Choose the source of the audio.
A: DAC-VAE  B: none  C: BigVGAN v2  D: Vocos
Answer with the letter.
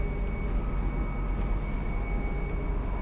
B